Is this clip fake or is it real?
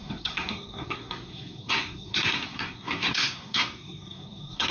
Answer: fake